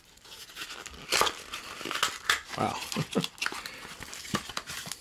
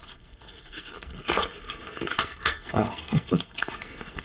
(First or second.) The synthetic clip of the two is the second